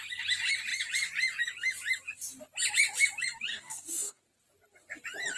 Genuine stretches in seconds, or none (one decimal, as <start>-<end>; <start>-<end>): 0.0-3.5; 4.2-5.4